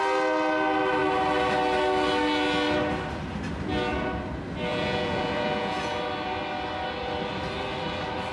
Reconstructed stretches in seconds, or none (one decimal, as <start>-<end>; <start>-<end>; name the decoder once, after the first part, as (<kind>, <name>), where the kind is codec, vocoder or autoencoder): 4.7-6.0 (vocoder, Vocos)

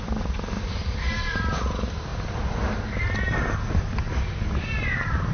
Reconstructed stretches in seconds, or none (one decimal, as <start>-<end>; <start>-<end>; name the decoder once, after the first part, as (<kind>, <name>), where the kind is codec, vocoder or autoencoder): none

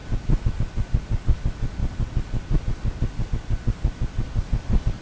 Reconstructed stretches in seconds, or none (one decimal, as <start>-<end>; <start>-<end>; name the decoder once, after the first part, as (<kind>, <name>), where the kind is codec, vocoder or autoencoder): none

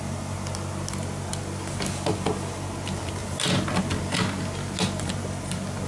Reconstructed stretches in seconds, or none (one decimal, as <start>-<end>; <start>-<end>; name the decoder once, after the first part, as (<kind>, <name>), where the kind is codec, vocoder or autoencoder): none

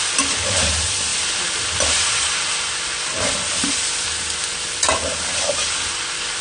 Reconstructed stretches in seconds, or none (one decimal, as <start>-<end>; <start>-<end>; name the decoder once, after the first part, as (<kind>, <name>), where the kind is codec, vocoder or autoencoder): none

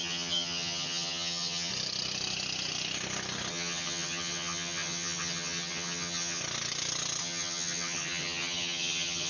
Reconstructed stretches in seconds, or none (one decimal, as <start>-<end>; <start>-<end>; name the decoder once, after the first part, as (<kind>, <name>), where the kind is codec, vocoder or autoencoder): 0.0-1.7 (vocoder, HiFi-GAN); 3.5-6.4; 7.2-9.3

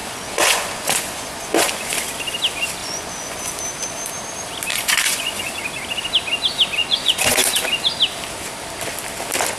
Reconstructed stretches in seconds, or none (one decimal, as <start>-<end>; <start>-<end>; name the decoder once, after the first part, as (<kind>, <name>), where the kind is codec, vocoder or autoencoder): 0.0-2.0 (vocoder, Vocos); 2.8-3.5; 4.7-5.5; 6.8-7.6

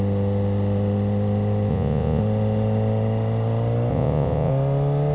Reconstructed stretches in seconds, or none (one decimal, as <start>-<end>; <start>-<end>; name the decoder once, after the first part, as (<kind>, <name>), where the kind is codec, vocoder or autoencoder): 1.7-2.2 (vocoder, Vocos); 3.9-4.5